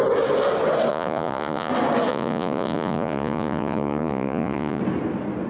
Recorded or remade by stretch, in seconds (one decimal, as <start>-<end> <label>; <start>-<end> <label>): 0.0-0.9 recorded; 0.9-1.7 remade; 1.7-2.1 recorded; 2.1-4.8 remade; 4.8-5.5 recorded